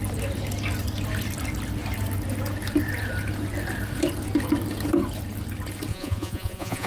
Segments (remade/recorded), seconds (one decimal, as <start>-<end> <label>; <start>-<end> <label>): 0.0-5.9 recorded; 5.9-6.9 remade